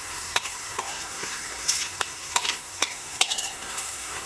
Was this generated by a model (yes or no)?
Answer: yes